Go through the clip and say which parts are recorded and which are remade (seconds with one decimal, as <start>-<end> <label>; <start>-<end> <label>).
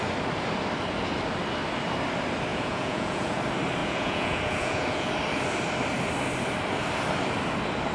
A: 0.0-2.5 recorded; 2.5-3.4 remade; 3.4-3.8 recorded; 3.8-5.1 remade; 5.1-7.9 recorded